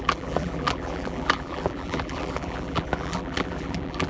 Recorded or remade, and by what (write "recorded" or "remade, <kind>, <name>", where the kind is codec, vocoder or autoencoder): remade, vocoder, BigVGAN v2